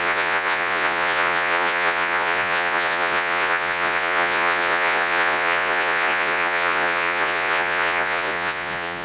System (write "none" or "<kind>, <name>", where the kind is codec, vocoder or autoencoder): vocoder, Vocos